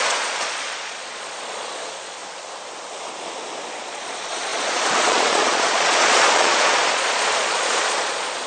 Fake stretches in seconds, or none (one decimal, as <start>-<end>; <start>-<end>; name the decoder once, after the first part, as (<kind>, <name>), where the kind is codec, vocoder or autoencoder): 0.0-2.2 (vocoder, Vocos); 3.7-8.5